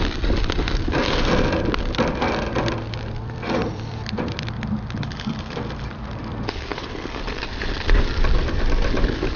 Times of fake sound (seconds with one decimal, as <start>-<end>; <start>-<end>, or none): 1.0-6.2; 6.7-7.4